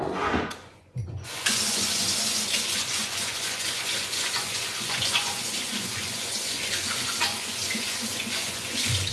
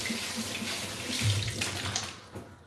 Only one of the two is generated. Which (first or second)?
first